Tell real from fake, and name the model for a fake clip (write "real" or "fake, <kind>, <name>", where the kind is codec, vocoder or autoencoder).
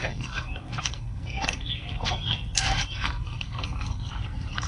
fake, codec, SNAC